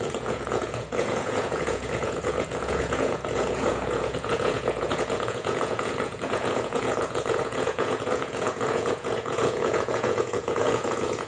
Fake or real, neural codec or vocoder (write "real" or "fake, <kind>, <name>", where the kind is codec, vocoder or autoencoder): fake, vocoder, Vocos